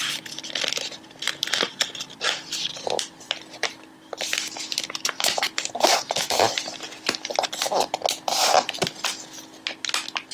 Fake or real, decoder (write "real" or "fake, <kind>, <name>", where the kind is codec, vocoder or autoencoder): real